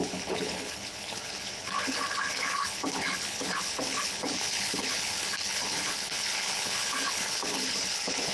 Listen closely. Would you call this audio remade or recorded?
remade